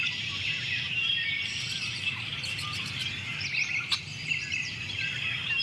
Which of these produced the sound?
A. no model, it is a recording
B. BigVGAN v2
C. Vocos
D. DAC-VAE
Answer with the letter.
B